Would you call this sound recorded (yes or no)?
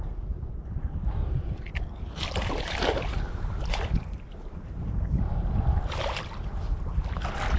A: yes